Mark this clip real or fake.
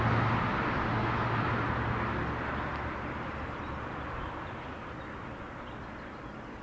real